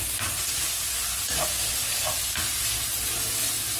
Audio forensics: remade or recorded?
recorded